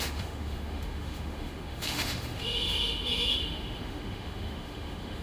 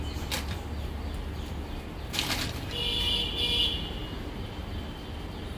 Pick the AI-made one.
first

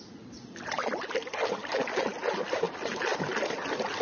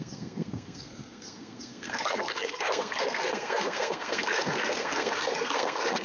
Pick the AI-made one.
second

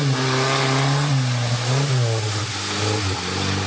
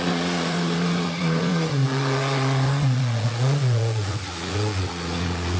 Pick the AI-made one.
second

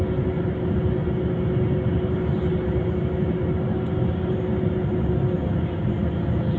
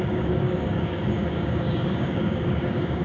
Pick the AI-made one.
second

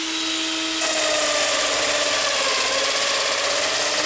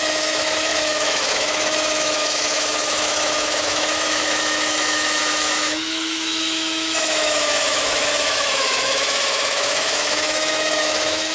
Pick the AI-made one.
second